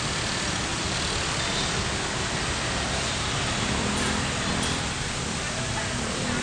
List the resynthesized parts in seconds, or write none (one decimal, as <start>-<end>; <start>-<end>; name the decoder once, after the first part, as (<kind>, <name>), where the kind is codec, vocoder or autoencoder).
none